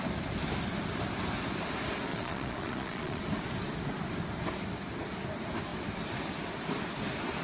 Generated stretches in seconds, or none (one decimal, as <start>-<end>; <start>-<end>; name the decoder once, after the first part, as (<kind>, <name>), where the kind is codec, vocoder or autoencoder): 2.1-3.2 (vocoder, Vocos)